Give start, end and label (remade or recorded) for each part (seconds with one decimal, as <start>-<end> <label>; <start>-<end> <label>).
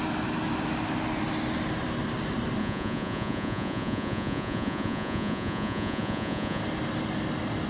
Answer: 0.0-2.6 recorded; 2.6-6.6 remade; 6.6-7.7 recorded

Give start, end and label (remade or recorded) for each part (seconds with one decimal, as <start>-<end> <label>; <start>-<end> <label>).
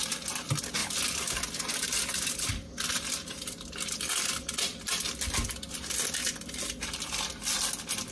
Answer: 0.0-8.1 recorded